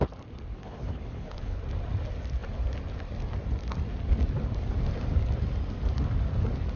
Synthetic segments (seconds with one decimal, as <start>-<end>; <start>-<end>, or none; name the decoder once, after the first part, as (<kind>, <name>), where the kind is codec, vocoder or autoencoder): 0.5-1.6 (codec, HILCodec)